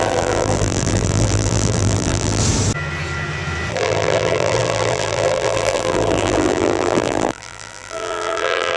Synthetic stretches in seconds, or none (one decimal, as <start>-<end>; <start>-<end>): 0.0-2.4; 3.7-8.8